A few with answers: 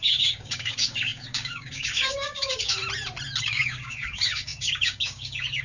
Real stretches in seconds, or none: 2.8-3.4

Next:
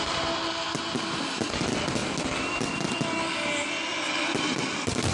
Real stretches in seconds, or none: 0.0-5.1

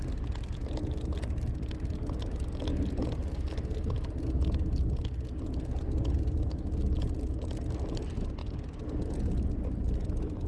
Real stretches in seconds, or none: 0.0-10.5